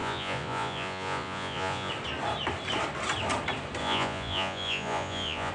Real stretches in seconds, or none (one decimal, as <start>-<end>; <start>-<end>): 1.9-3.8